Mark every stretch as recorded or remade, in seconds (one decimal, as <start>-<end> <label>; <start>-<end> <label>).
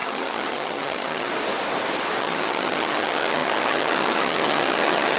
0.0-1.3 remade; 1.3-2.2 recorded; 2.2-5.2 remade